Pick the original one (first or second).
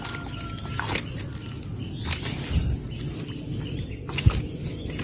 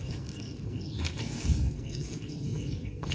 first